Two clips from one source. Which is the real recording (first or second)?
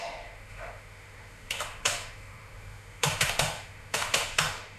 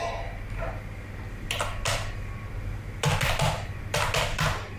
second